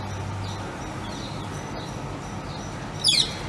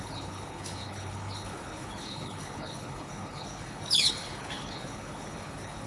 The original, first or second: first